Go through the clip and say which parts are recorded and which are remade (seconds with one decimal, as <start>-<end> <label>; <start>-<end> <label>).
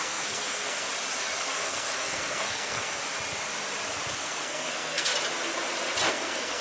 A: 0.0-0.9 remade; 0.9-1.4 recorded; 1.4-3.0 remade; 3.0-4.1 recorded; 4.1-5.1 remade; 5.1-6.1 recorded; 6.1-6.6 remade